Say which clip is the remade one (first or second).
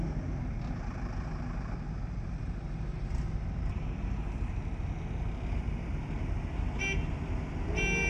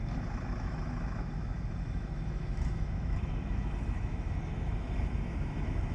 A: second